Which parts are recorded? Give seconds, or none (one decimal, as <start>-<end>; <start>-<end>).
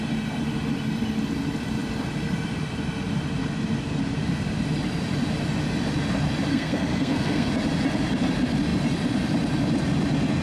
0.0-6.5; 7.5-10.4